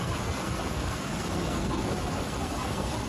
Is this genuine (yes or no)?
no